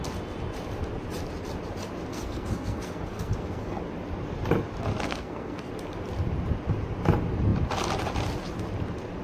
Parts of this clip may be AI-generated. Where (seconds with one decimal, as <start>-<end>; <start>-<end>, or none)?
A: 2.1-3.8; 4.9-5.7